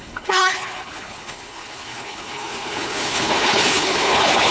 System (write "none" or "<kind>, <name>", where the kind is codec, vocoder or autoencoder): codec, HILCodec